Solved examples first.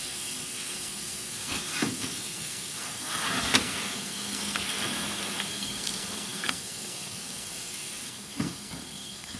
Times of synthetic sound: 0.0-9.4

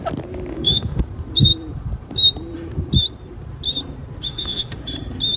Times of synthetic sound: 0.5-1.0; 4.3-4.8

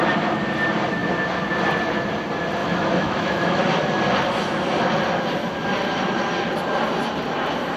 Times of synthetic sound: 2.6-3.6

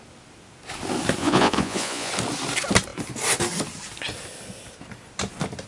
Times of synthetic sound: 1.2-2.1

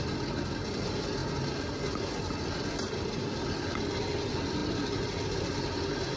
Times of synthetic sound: none

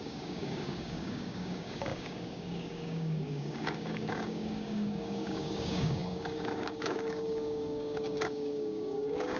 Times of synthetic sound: 0.0-9.4